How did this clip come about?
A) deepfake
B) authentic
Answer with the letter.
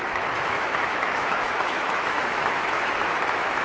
A